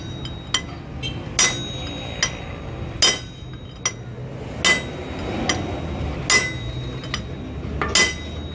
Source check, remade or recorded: recorded